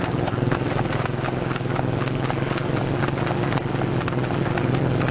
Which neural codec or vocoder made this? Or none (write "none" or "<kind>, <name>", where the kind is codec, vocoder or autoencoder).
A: none